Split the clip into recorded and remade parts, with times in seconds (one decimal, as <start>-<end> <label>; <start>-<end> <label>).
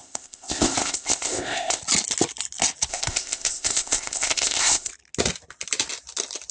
0.0-1.8 remade; 1.8-2.9 recorded; 2.9-4.9 remade; 4.9-6.5 recorded